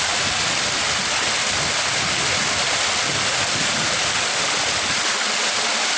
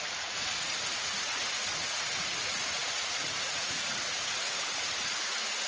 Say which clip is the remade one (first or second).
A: second